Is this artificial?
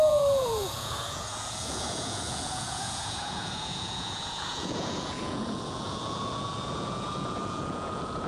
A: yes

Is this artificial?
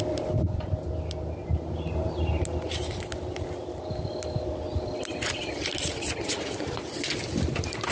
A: no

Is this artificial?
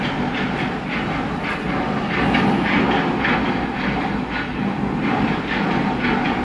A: no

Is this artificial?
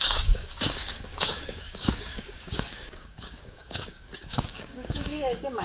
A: yes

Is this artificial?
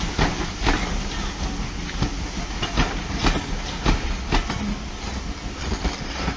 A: no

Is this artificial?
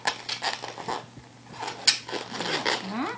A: no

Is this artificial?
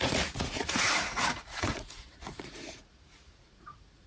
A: yes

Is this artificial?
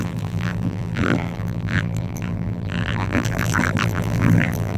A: yes